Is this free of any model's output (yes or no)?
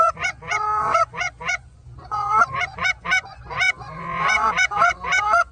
no